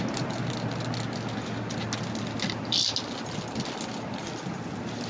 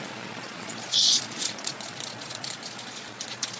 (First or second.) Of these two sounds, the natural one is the first